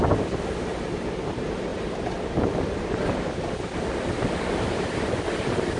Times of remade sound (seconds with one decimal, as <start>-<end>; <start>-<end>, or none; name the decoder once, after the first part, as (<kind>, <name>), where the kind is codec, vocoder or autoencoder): none